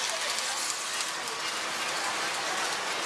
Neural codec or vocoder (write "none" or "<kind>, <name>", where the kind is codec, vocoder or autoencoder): none